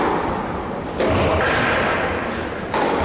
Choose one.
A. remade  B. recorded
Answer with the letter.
B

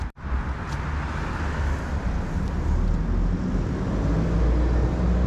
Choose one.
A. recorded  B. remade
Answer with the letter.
A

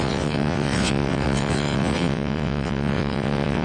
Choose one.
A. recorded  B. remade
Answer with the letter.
B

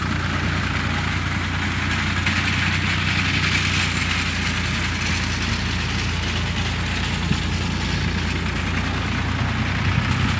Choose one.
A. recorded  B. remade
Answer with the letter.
A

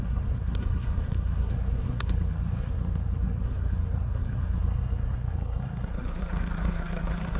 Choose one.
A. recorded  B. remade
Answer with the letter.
B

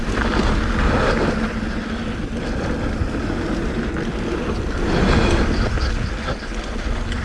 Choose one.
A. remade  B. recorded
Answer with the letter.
B